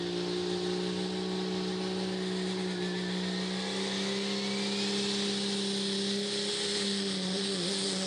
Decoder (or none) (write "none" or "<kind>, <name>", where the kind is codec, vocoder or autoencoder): none